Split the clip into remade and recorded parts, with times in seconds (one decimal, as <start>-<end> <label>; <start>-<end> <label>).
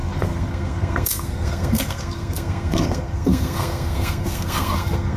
0.0-5.2 remade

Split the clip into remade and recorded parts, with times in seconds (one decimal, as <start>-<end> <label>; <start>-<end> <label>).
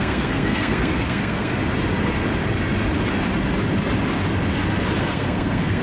0.0-1.5 remade; 1.5-5.0 recorded; 5.0-5.8 remade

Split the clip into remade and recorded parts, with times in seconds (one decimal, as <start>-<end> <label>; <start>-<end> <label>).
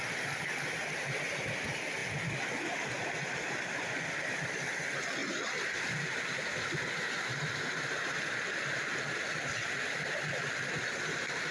0.0-11.5 recorded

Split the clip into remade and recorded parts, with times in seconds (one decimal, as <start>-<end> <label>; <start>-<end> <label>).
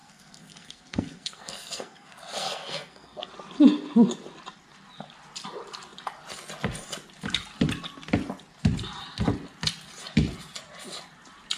0.0-3.3 remade; 3.3-11.6 recorded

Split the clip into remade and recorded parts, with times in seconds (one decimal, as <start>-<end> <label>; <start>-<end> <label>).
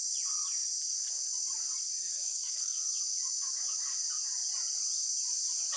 0.0-2.0 recorded; 2.0-2.9 remade; 2.9-5.8 recorded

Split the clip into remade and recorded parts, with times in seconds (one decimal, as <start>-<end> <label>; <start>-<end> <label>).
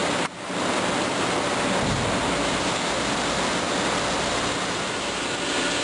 0.0-5.8 recorded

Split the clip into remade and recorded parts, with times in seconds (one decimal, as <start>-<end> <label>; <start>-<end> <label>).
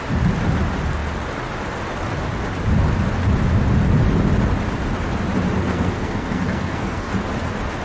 0.0-5.6 recorded; 5.6-7.1 remade; 7.1-7.8 recorded